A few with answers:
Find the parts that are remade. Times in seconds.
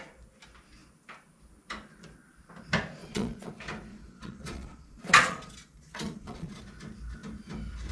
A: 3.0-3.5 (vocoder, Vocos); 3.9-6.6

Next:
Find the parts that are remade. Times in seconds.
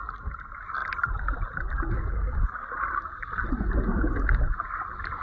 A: none